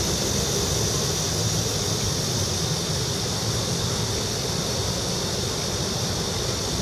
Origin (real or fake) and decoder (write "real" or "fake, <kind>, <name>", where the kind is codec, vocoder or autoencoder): real